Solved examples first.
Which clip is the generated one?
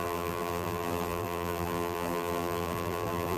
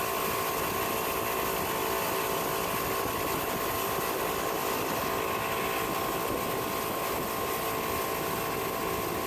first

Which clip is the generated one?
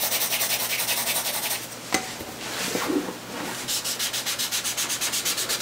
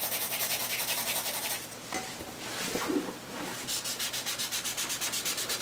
second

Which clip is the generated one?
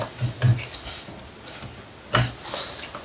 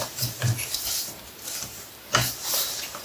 second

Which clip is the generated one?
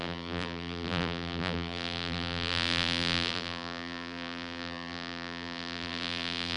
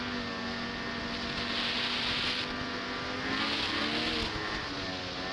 first